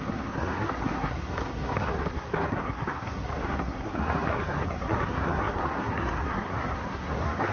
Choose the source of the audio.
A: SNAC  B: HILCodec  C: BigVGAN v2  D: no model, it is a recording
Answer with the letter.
A